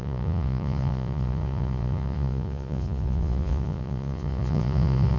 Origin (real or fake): fake